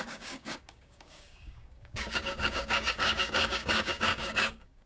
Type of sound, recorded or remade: remade